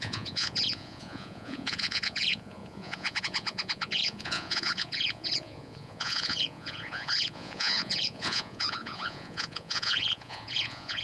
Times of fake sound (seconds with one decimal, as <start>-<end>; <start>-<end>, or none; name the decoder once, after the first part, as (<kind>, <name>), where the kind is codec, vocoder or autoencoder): 0.0-11.0 (vocoder, Vocos)